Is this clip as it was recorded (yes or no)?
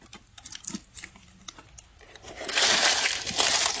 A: no